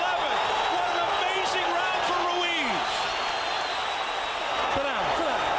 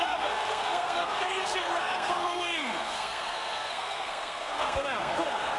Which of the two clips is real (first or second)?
first